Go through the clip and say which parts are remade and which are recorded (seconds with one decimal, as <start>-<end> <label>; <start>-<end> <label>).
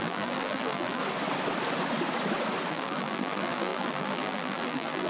0.0-1.0 remade; 1.0-2.7 recorded; 2.7-5.1 remade